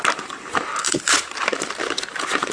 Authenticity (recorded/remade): remade